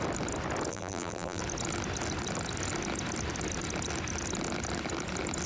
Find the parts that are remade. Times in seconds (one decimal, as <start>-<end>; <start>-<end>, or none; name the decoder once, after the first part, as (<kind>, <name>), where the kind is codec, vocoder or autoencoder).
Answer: 0.7-1.4 (vocoder, BigVGAN v2)